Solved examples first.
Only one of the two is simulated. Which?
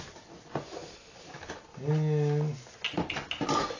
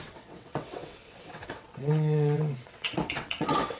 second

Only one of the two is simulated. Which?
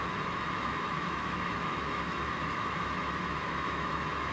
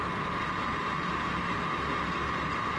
first